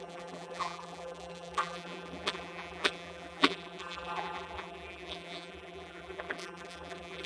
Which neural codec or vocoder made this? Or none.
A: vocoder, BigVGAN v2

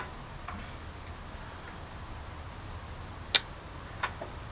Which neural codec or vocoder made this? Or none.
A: none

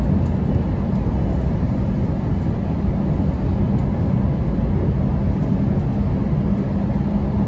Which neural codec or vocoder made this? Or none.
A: none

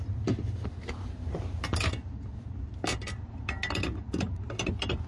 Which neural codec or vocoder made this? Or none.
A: none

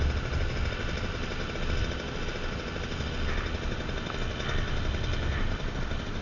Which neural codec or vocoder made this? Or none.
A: none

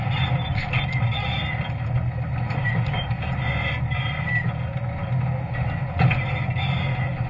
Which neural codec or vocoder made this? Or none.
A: none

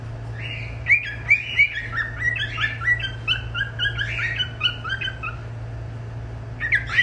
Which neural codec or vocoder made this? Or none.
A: none